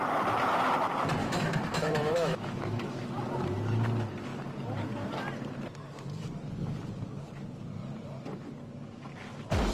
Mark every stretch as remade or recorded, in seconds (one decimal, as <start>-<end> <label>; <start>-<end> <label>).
0.0-1.2 recorded; 1.2-3.1 remade; 3.1-9.7 recorded